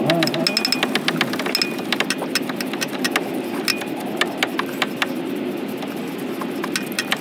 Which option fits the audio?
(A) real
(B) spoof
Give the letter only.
A